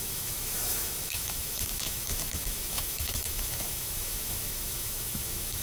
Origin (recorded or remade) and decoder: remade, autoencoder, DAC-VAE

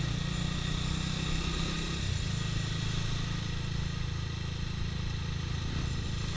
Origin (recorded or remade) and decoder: recorded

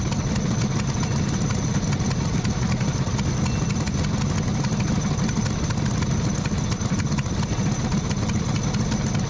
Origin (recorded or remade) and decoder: recorded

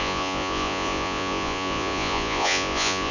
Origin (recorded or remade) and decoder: remade, vocoder, Vocos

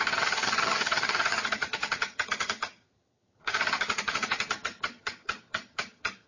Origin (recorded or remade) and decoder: remade, vocoder, HiFi-GAN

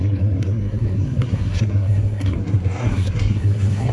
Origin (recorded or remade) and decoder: remade, codec, SNAC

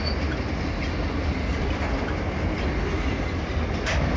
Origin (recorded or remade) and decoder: recorded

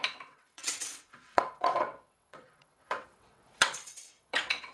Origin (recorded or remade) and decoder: remade, vocoder, WaveNeXt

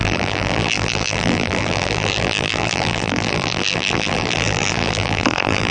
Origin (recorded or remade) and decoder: remade, vocoder, BigVGAN v2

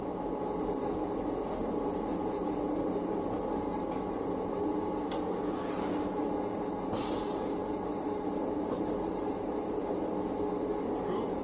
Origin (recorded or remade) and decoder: recorded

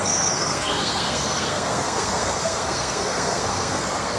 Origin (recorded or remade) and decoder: remade, codec, SNAC